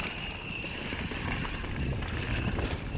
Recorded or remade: recorded